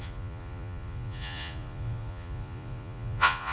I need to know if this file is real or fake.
fake